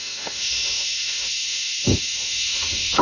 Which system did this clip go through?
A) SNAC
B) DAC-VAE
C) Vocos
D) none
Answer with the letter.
B